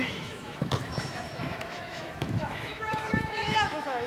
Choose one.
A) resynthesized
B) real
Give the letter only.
A